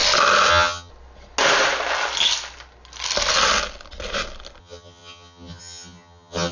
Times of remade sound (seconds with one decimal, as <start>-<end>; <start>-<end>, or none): 0.5-0.9; 4.6-6.5